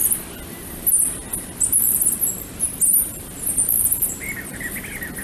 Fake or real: real